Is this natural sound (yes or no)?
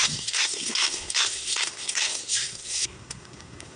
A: no